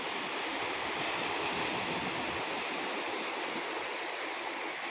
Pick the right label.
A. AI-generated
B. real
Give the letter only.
B